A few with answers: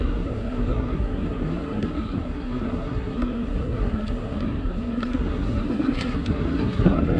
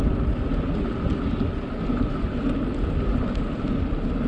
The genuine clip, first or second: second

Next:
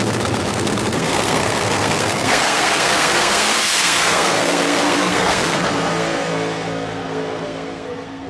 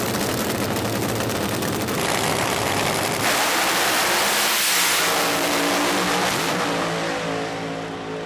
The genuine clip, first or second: second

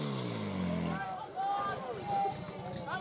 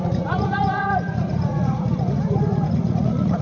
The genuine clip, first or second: first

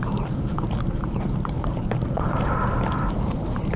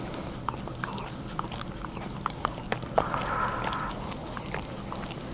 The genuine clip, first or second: second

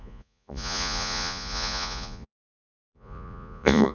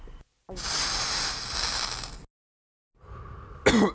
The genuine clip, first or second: second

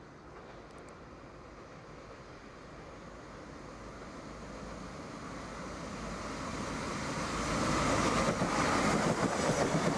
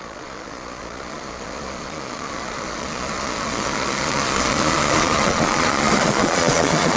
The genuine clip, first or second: first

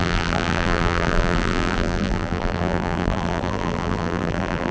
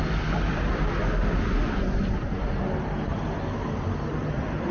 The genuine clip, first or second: second